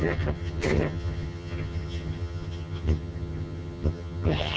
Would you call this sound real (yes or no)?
no